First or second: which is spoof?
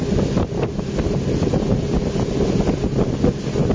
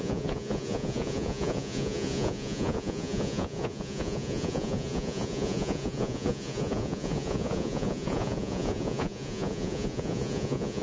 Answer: second